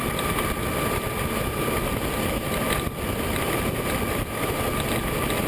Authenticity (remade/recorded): recorded